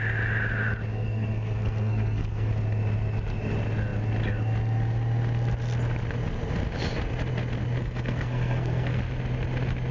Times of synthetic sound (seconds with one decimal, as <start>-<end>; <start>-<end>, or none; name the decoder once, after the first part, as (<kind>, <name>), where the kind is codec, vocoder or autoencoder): 0.9-2.5 (codec, SNAC); 7.8-9.0